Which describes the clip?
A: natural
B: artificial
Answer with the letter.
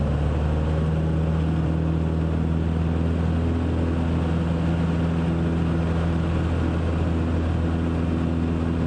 A